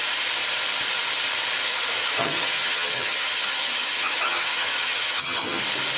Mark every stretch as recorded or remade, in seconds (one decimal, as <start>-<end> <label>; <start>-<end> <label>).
0.0-2.0 recorded; 2.0-5.6 remade; 5.6-6.0 recorded